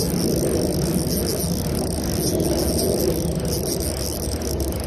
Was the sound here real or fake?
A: real